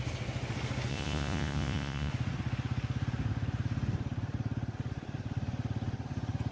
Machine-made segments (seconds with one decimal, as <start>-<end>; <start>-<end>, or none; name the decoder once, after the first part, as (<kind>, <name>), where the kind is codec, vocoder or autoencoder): 0.9-2.1 (vocoder, Vocos)